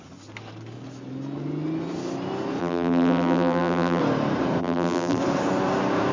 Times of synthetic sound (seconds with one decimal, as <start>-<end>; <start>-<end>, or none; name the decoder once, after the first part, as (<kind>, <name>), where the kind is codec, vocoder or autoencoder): 2.6-4.0 (vocoder, BigVGAN v2); 4.6-5.2